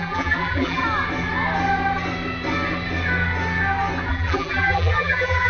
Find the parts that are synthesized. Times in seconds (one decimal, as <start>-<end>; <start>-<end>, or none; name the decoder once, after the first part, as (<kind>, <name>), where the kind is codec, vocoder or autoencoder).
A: 0.0-0.8 (vocoder, BigVGAN v2); 4.1-5.5